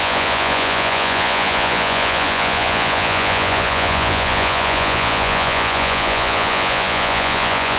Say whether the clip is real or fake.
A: fake